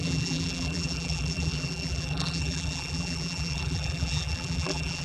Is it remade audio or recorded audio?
remade